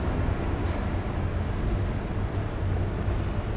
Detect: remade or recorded recorded